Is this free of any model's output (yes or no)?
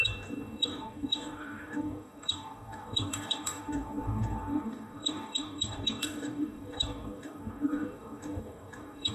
no